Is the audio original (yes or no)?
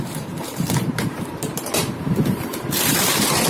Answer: no